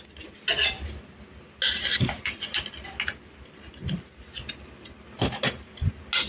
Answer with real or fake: real